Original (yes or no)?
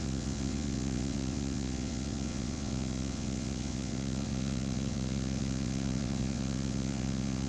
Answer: no